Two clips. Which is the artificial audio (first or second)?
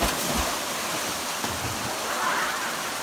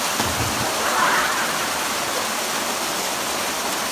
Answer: second